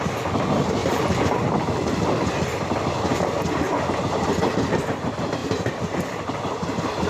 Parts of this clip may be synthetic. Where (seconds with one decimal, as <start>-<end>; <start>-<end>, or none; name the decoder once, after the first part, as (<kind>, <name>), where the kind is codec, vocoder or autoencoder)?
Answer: 5.4-7.1 (vocoder, BigVGAN v2)